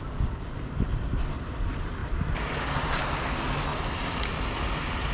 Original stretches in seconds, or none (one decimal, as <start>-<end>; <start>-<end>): 0.0-5.1